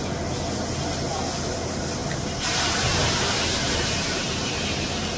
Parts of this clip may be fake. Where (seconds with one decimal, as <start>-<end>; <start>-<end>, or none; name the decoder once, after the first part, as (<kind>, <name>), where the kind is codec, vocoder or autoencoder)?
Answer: 2.0-5.2 (vocoder, BigVGAN v2)